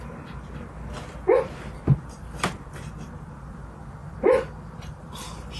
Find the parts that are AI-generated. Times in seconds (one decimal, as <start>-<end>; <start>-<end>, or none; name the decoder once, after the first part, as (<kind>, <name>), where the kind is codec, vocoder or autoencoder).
none